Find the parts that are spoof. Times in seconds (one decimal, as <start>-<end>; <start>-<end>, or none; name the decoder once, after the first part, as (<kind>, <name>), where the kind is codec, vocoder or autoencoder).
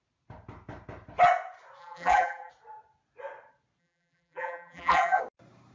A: 1.8-2.5 (vocoder, BigVGAN v2); 3.8-5.2